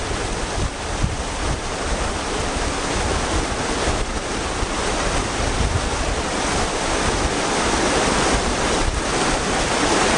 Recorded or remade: recorded